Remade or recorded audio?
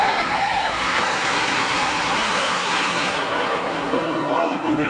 remade